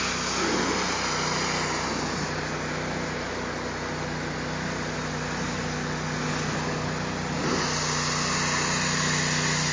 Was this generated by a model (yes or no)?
no